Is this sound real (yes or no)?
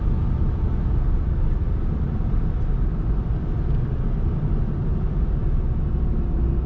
yes